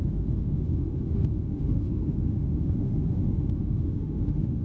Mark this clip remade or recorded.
remade